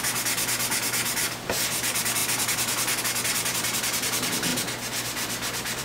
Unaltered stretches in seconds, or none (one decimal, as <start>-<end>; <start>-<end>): 0.0-5.8